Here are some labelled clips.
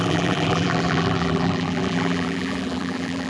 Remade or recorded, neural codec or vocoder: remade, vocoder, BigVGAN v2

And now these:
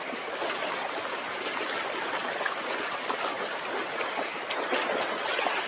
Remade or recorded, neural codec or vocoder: recorded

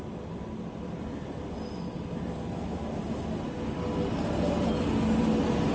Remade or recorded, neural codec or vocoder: recorded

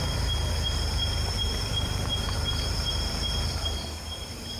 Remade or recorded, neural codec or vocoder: remade, vocoder, BigVGAN v2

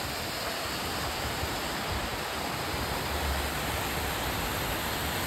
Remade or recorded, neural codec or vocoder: recorded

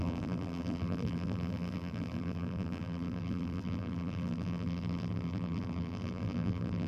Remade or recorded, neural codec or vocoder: remade, vocoder, BigVGAN v2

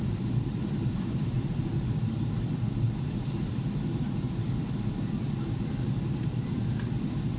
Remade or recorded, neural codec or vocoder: remade, vocoder, BigVGAN v2